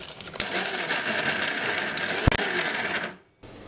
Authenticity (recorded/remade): recorded